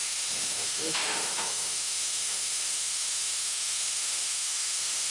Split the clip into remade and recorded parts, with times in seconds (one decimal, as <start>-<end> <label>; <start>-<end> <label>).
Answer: 0.0-5.1 remade